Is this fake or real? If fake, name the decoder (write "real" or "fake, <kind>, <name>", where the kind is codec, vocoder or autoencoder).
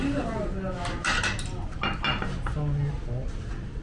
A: real